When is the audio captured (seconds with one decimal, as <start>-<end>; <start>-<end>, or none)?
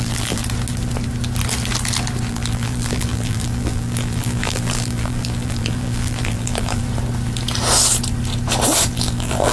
0.4-2.3; 6.8-8.9